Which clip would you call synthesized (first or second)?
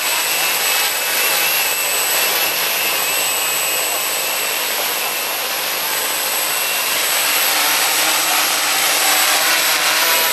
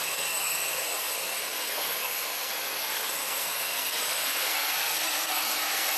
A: second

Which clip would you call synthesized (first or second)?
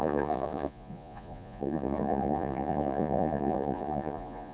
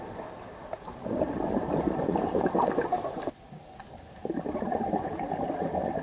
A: first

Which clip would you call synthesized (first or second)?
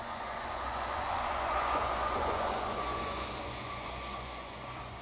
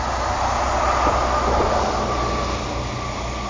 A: first